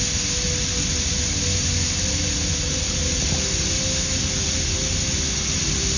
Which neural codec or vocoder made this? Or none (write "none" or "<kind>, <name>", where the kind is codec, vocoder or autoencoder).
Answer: none